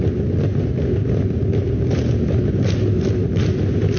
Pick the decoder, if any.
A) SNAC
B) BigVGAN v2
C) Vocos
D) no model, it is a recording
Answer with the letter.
D